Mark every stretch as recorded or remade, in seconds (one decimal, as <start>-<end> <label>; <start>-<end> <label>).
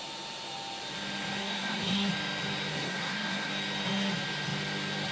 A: 0.0-1.4 recorded; 1.4-2.1 remade; 2.1-2.7 recorded; 2.7-3.5 remade; 3.5-5.1 recorded